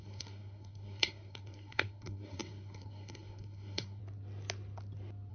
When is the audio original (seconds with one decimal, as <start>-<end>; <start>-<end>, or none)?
4.0-5.3